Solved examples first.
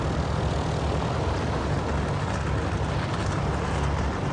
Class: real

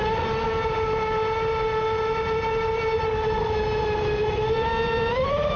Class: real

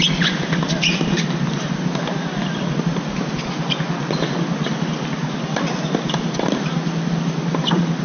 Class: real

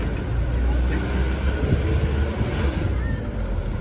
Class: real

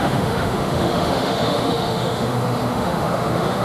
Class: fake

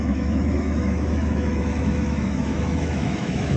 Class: fake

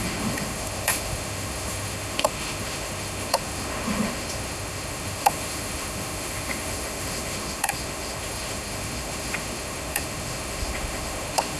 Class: fake